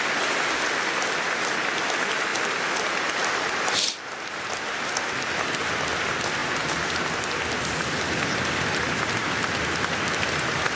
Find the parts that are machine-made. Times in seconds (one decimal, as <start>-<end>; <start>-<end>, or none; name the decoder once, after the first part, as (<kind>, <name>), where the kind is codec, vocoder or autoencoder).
none